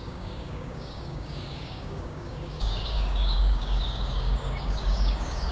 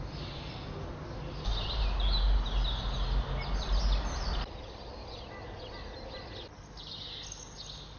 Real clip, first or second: second